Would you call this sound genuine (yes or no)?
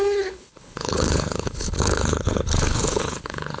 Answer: no